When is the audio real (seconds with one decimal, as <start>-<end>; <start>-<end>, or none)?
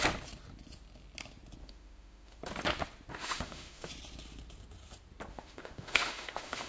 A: 0.0-1.6; 2.4-3.1; 3.9-5.3